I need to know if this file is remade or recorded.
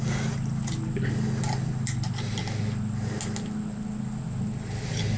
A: recorded